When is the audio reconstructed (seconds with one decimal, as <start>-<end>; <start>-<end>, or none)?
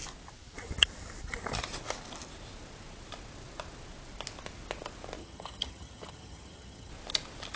5.2-6.9